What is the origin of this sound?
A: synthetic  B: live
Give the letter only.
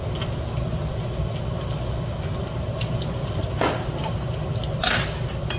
B